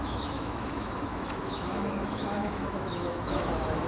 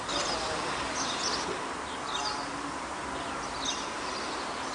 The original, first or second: second